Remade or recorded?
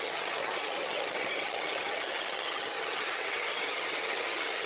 remade